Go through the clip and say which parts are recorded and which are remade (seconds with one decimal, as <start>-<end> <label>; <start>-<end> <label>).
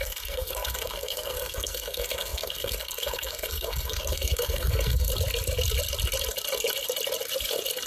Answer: 0.0-5.1 remade; 5.1-7.9 recorded